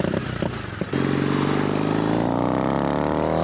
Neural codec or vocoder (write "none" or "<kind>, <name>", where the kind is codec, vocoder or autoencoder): none